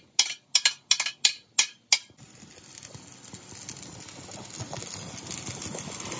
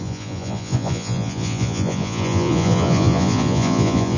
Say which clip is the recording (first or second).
first